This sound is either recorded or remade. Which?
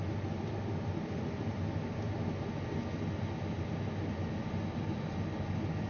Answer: recorded